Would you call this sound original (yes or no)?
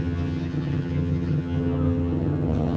no